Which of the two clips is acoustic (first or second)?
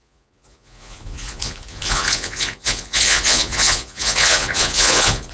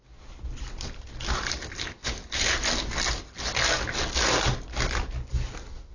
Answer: second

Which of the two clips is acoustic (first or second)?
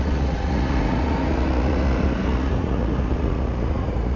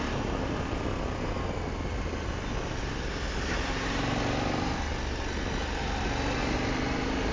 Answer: second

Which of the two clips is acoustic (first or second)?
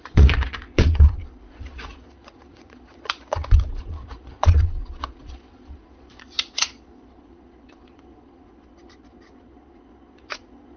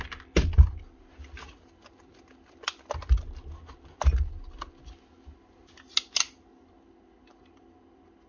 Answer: second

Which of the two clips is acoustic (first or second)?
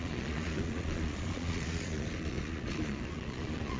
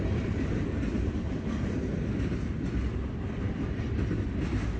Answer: second